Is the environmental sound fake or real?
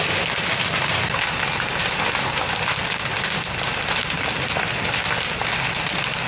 real